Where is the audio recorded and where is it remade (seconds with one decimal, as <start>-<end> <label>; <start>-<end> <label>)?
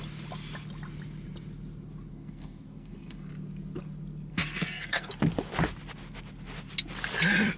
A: 0.0-2.1 recorded; 2.1-3.3 remade; 3.3-4.3 recorded; 4.3-5.1 remade; 5.1-7.6 recorded